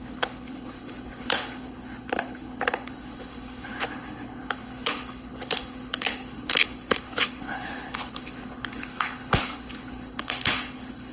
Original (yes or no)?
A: no